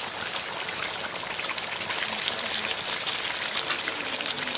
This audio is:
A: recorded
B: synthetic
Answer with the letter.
A